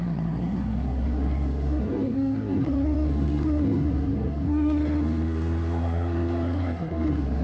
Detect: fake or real fake